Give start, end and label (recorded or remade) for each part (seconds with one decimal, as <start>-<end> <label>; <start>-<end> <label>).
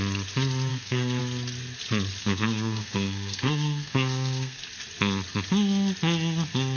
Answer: 0.0-0.7 recorded; 0.7-1.2 remade; 1.2-2.2 recorded; 2.2-4.6 remade; 4.6-6.8 recorded